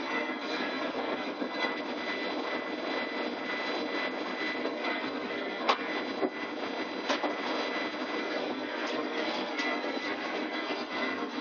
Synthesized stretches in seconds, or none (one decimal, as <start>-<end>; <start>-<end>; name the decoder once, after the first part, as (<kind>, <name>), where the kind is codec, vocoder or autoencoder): 0.0-1.7 (codec, SNAC); 4.6-5.9; 8.2-11.4